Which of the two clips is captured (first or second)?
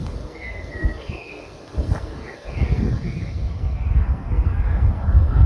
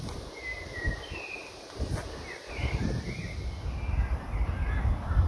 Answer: second